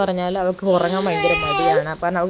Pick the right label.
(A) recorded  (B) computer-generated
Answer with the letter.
B